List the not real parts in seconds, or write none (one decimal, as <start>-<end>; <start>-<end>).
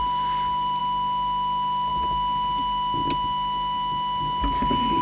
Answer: 0.0-0.8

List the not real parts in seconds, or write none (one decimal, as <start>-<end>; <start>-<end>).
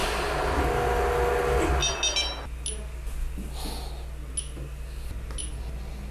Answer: 0.0-0.6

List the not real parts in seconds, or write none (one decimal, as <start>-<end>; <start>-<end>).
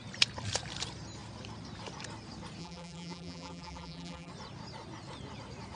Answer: 2.6-4.3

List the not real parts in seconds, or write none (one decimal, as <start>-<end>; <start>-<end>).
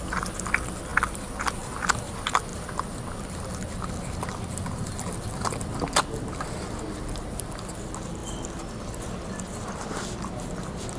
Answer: none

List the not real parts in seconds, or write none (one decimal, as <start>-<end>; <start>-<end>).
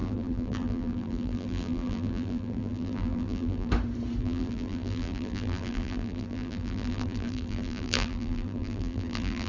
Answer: 0.0-3.7; 4.2-9.5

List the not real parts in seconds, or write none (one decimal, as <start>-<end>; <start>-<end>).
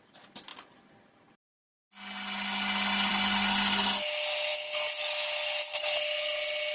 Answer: none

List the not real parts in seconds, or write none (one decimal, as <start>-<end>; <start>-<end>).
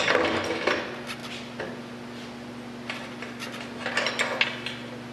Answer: none